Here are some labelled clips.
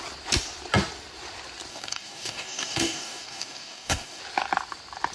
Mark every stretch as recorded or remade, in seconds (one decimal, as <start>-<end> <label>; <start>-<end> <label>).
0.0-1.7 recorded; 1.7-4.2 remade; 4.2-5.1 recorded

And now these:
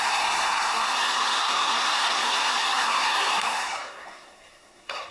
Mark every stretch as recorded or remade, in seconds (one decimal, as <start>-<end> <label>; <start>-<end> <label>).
0.0-5.1 remade

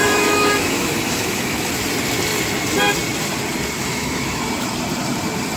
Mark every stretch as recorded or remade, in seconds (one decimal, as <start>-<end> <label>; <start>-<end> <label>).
0.0-1.7 remade; 1.7-3.8 recorded; 3.8-4.4 remade; 4.4-5.6 recorded